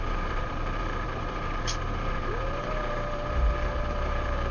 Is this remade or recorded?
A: remade